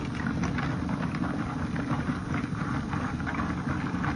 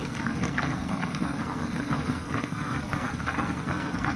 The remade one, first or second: second